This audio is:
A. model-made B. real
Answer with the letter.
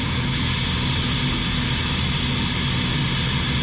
B